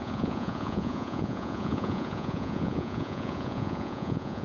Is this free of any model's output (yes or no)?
no